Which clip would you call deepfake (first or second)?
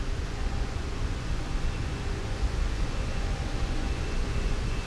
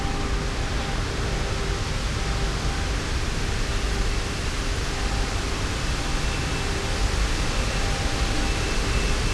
first